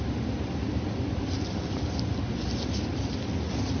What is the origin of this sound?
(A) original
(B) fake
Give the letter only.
A